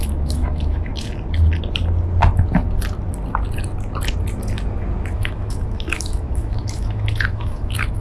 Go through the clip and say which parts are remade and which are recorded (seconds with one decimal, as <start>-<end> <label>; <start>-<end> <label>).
0.0-0.9 remade; 0.9-5.1 recorded; 5.1-8.0 remade

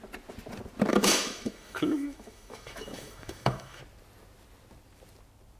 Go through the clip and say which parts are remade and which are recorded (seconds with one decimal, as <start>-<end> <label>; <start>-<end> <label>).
0.0-0.9 recorded; 0.9-3.8 remade; 3.8-5.6 recorded